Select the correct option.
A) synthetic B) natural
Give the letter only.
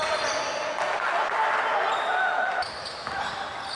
B